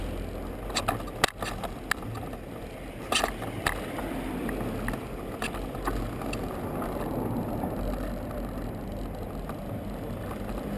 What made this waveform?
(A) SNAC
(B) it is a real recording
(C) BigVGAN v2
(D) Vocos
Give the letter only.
B